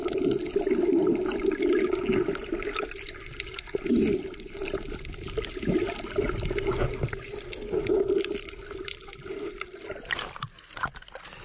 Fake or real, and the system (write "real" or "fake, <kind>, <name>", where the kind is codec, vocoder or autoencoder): real